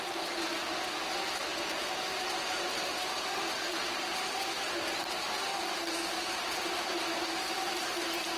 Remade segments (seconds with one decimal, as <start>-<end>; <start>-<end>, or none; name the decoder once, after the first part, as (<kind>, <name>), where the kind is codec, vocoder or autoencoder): 1.5-3.9 (vocoder, BigVGAN v2); 5.5-8.4